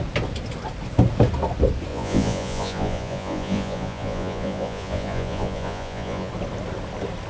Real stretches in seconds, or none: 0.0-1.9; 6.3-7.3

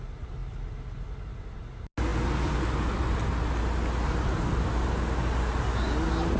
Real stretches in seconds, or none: 0.0-6.4

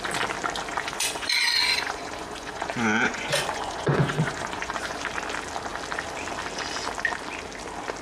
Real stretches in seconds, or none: 0.0-0.7; 5.1-8.0

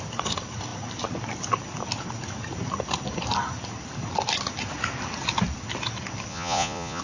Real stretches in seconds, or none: 0.0-6.3

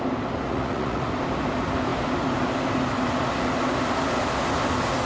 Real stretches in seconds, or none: 0.0-0.5; 1.1-5.1

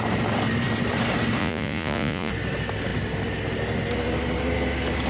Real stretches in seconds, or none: 0.0-1.4; 2.3-5.1

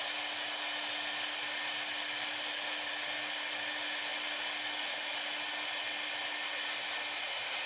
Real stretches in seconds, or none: 0.0-7.7

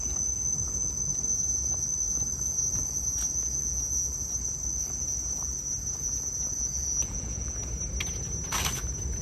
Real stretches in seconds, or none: 0.0-6.7; 7.6-9.2